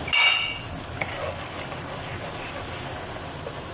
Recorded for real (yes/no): yes